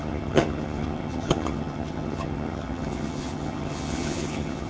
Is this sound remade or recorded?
remade